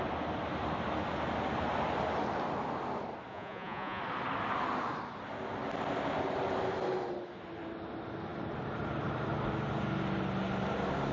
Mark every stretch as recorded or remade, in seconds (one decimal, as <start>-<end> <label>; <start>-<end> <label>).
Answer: 0.0-3.3 recorded; 3.3-4.0 remade; 4.0-11.1 recorded